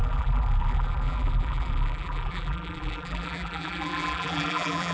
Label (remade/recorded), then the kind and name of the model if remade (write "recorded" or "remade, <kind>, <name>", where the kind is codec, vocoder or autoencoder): remade, vocoder, BigVGAN v2